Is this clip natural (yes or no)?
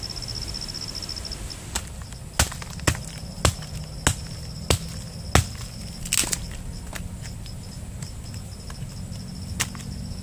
yes